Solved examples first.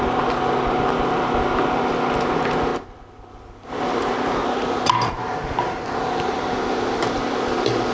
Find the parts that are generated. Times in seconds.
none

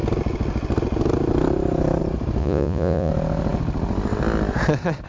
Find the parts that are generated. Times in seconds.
2.4-3.1 (vocoder, Vocos)

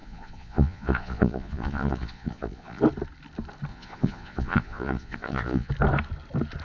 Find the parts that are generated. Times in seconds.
0.0-2.8 (vocoder, Vocos); 3.7-5.7

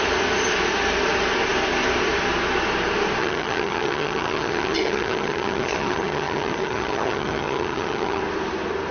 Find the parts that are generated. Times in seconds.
3.2-8.2 (vocoder, HiFi-GAN)

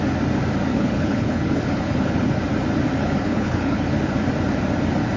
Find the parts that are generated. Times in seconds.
0.7-2.3 (codec, HILCodec); 3.0-4.0

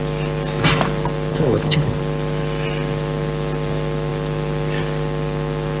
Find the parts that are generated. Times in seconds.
1.3-2.0 (codec, HILCodec)

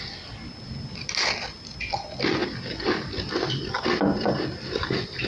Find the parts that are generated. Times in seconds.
none